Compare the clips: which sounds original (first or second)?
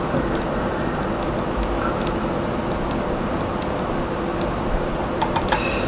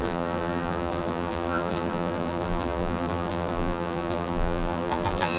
first